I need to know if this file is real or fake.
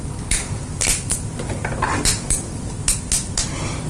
real